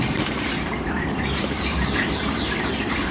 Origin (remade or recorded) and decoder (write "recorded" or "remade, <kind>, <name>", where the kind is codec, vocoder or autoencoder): remade, vocoder, BigVGAN v2